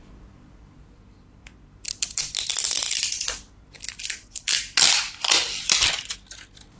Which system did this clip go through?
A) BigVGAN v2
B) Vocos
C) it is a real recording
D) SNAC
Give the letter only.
C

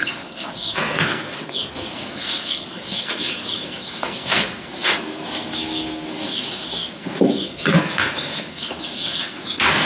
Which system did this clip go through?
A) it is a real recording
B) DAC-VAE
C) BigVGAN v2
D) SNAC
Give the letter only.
D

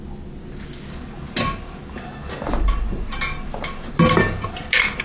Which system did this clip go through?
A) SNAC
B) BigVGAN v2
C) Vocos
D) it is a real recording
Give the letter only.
D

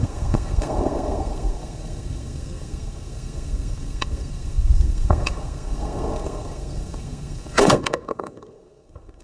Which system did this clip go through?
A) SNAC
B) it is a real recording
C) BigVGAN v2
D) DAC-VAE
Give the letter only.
A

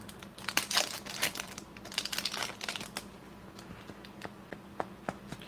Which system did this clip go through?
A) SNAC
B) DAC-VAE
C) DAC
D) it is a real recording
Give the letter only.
D